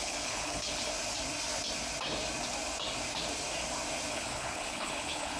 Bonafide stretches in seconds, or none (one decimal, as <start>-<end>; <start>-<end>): 0.9-4.1